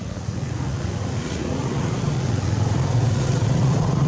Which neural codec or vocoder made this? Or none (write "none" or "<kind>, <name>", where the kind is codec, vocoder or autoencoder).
vocoder, Vocos